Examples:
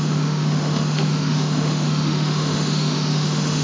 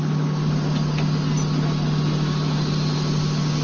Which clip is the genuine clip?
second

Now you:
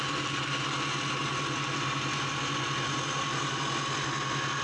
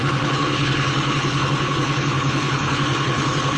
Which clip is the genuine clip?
first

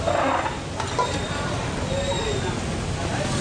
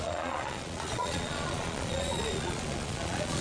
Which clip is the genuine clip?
first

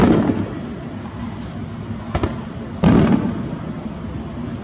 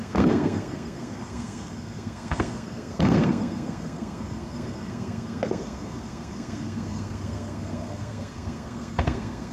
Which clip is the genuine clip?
first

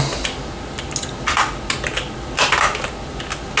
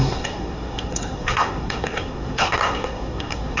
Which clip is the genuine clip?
first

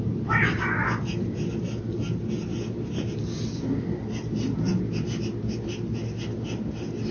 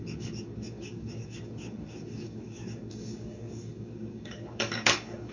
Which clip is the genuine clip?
first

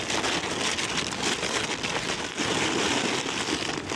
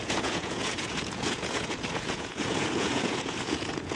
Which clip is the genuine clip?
first